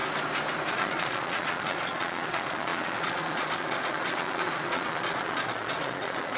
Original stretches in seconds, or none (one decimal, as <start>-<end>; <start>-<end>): 0.0-0.7